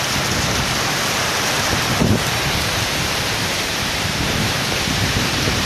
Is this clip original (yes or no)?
no